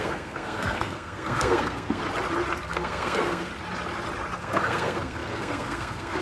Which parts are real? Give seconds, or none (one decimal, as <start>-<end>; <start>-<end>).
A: 2.0-2.6; 3.5-4.4